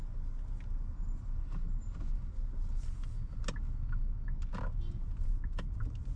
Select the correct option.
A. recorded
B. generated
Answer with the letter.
A